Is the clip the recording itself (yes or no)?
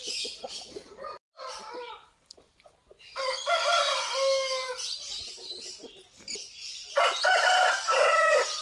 yes